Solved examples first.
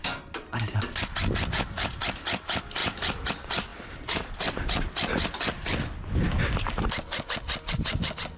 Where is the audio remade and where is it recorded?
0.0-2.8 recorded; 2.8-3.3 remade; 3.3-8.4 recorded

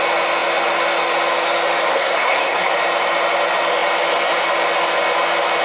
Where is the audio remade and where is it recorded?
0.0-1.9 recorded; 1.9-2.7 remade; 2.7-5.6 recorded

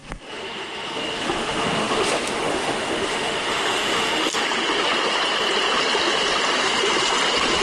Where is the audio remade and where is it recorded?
0.0-4.4 remade; 4.4-7.6 recorded